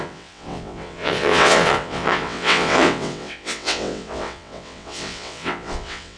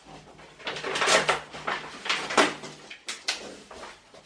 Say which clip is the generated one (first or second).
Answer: first